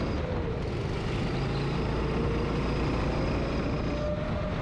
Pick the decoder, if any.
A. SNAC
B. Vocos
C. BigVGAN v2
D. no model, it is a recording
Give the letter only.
D